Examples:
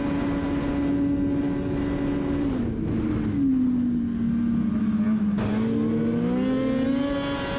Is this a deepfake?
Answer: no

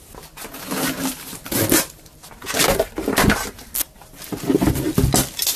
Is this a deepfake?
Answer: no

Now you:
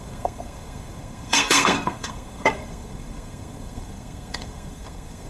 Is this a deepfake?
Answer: yes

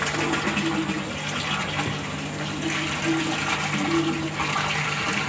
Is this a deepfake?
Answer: no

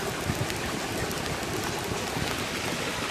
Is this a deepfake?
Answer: no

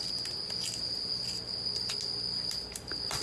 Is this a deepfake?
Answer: no